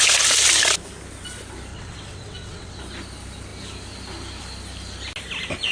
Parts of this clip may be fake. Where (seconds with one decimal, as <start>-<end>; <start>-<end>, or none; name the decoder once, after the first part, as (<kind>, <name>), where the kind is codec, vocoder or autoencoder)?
1.7-2.8 (vocoder, WaveNeXt)